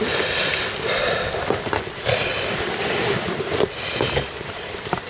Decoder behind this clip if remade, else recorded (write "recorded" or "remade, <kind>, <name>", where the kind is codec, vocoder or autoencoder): recorded